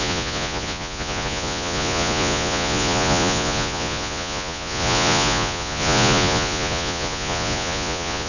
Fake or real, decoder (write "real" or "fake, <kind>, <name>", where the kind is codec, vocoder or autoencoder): fake, vocoder, Vocos